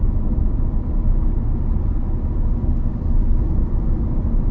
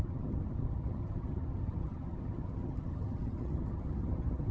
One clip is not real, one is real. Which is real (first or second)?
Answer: first